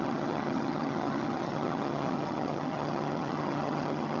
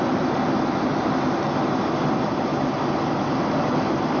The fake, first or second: first